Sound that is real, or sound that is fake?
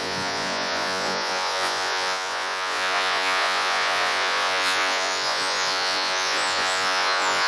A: fake